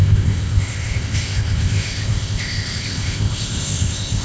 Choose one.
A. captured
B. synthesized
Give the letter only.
B